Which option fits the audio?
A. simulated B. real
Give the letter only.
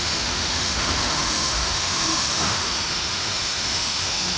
A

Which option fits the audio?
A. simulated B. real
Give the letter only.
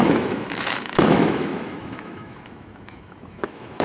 A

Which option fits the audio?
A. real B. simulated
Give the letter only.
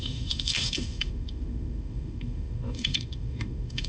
B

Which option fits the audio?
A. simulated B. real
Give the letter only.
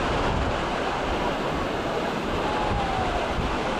B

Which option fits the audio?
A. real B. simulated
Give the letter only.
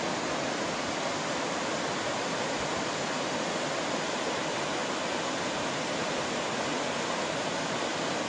A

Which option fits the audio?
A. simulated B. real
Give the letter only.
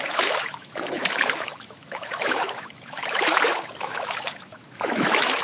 A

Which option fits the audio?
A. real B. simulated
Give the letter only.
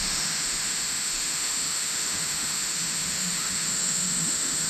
B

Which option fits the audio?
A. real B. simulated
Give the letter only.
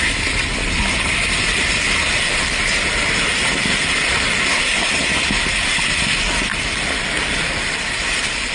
A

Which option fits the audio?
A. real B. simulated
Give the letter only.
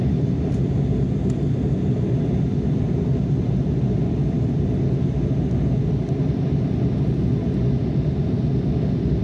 A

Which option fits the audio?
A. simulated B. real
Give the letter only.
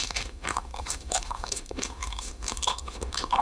A